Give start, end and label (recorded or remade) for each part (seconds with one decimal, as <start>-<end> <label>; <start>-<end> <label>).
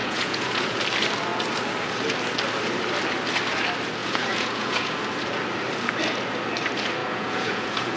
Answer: 0.0-0.8 remade; 0.8-4.0 recorded; 4.0-5.0 remade; 5.0-7.0 recorded; 7.0-8.0 remade